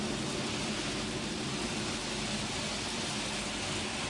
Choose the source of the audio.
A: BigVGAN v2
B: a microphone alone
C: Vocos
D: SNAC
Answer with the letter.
B